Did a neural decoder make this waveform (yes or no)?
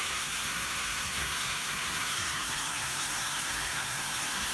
yes